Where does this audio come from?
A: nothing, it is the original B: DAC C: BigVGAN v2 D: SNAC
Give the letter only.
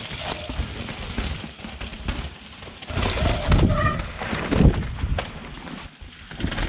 A